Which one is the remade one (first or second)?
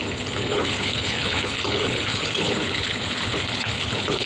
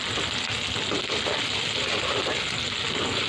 first